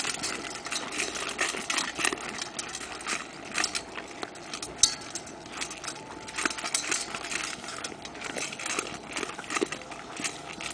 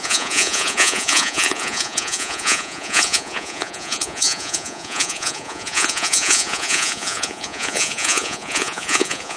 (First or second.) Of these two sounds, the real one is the first